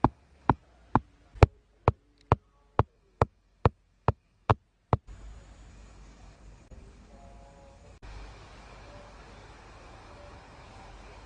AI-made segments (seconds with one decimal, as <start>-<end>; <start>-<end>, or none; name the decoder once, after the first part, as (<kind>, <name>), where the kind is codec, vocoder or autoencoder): 0.0-0.6 (codec, DAC); 2.9-4.5; 5.7-11.3